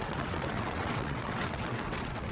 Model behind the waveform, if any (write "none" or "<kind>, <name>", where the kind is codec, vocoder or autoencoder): vocoder, WaveNeXt